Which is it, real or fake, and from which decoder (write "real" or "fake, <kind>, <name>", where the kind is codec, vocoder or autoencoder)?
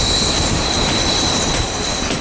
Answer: fake, vocoder, BigVGAN v2